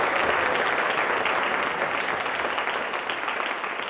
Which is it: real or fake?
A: real